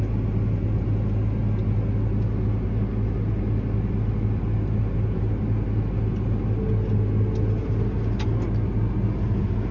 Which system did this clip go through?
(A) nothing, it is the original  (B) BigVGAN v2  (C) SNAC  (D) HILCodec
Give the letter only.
A